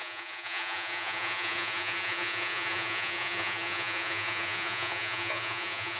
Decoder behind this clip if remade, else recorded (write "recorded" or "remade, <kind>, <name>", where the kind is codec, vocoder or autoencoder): remade, vocoder, Vocos